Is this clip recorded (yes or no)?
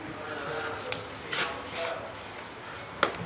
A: yes